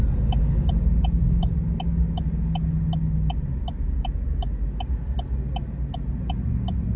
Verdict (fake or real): real